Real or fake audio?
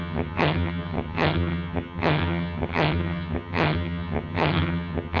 fake